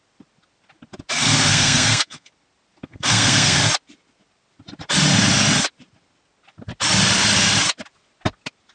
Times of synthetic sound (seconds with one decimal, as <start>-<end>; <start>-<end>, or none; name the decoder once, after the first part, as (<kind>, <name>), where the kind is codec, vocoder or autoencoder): 1.2-2.3 (codec, SNAC); 2.8-3.6